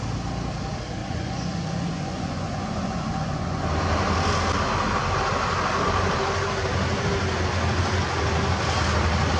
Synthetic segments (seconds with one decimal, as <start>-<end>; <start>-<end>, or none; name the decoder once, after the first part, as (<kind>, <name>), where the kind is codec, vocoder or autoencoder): 1.0-3.6 (vocoder, Vocos)